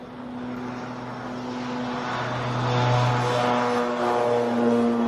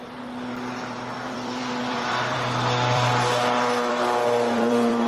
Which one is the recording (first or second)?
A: first